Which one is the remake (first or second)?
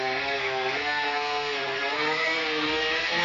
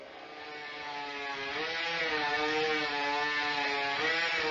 first